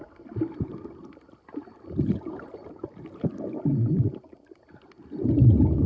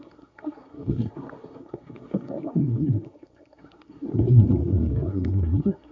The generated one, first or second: second